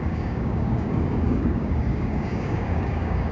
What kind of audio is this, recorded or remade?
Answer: remade